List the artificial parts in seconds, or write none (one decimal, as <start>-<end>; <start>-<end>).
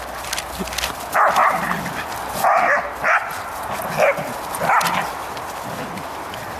none